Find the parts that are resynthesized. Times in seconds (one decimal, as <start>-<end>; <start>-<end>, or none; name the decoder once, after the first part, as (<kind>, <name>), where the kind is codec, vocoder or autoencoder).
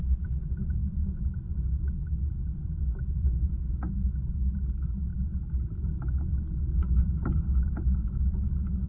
none